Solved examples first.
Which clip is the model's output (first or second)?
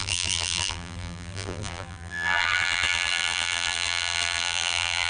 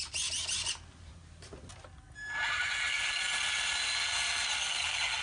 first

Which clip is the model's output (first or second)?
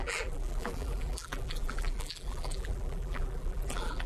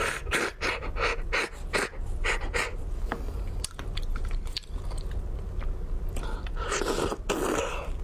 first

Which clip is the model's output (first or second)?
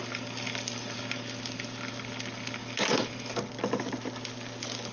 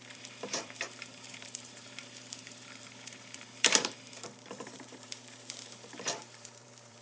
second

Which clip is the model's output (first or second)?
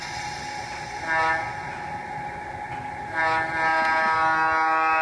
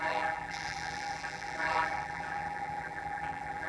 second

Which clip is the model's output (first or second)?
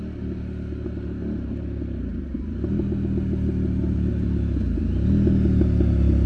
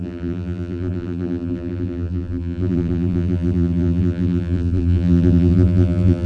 second